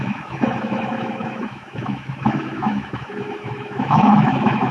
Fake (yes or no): yes